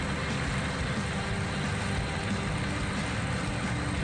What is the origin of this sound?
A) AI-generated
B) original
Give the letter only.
B